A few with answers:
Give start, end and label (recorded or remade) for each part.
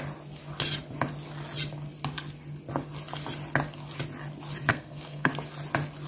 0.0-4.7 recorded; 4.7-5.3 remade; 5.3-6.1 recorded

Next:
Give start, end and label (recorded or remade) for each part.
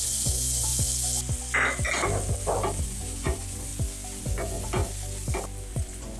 0.0-0.7 remade; 0.7-2.8 recorded; 2.8-3.7 remade; 3.7-4.2 recorded; 4.2-4.8 remade; 4.8-5.7 recorded; 5.7-6.2 remade